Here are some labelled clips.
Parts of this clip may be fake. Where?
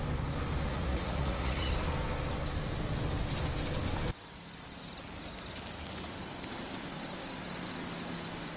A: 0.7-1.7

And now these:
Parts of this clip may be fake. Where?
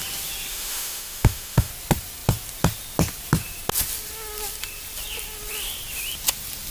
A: 0.5-1.7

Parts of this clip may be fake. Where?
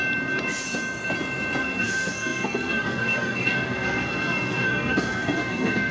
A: 1.6-5.9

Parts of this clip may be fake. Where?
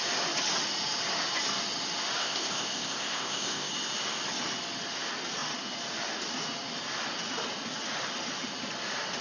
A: 2.2-3.7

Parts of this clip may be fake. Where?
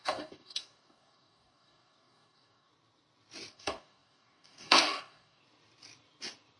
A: 0.0-2.7; 3.5-5.4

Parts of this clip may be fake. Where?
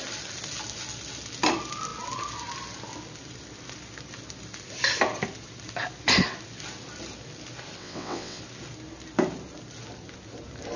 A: 7.8-8.4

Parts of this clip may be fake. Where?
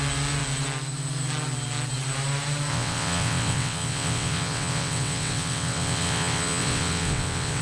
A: 2.7-7.6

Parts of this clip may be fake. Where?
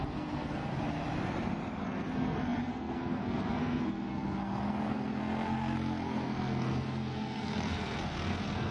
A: 0.0-0.7; 1.8-8.7